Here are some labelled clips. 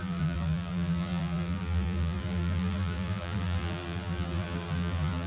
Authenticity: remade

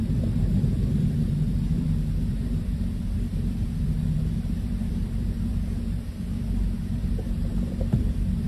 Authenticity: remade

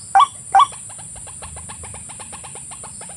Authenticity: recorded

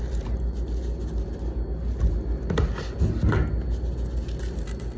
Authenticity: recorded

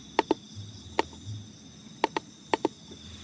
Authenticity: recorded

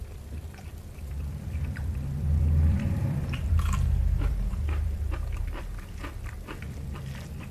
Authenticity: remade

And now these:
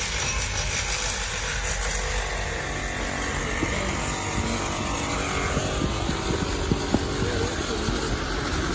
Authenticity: recorded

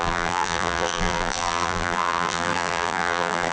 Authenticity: remade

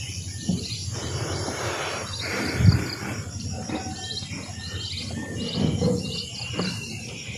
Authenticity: remade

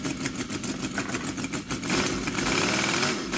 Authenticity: recorded